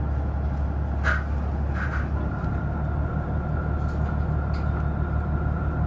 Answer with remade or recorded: recorded